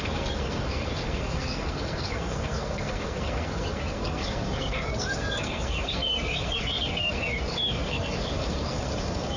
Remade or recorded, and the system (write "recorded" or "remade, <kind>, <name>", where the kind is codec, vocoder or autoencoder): remade, codec, SNAC